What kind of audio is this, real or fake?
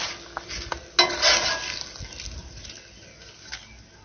real